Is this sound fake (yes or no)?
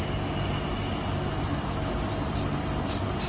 no